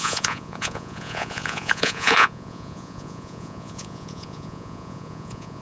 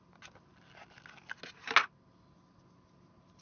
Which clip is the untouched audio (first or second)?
second